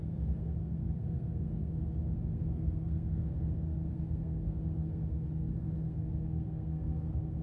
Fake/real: fake